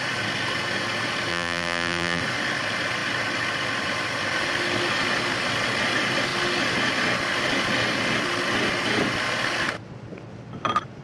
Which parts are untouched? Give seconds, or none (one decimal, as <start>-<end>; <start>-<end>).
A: 0.0-1.3; 2.2-11.0